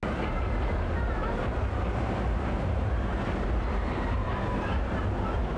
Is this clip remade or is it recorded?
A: recorded